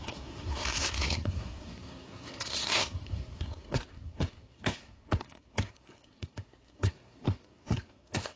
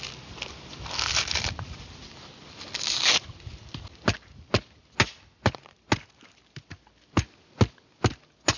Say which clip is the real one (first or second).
second